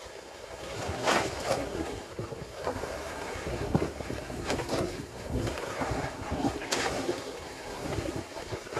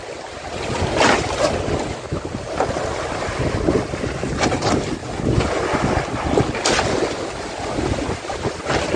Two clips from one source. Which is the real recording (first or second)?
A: second